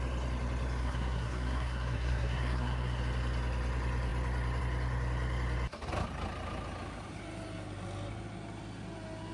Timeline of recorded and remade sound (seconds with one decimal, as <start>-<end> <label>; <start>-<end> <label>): 0.0-0.8 recorded; 0.8-3.0 remade; 3.0-9.3 recorded